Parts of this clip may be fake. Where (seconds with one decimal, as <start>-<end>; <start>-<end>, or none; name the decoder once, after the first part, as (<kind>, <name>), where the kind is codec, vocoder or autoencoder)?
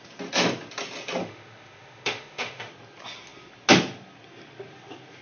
1.2-2.7 (autoencoder, DAC-VAE)